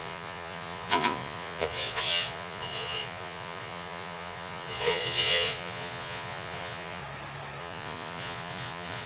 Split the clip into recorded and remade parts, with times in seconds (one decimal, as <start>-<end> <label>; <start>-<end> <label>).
0.0-7.0 remade; 7.0-7.6 recorded; 7.6-9.1 remade